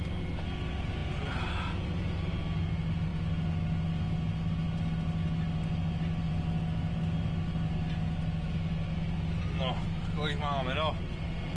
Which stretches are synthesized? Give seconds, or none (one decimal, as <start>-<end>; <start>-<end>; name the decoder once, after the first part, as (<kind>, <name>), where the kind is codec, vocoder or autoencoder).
none